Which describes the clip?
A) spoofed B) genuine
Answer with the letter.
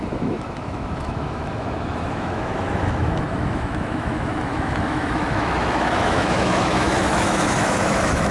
A